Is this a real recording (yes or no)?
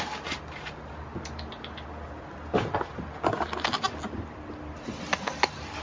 yes